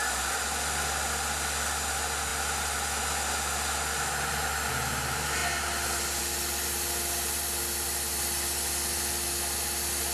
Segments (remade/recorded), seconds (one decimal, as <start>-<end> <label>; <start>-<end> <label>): 0.0-10.1 recorded